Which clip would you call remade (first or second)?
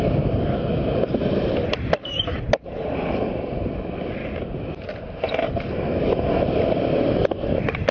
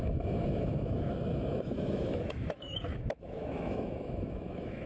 second